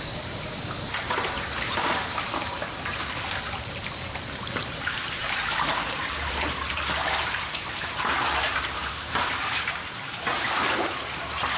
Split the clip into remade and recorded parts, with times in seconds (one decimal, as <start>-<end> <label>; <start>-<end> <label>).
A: 0.0-11.6 remade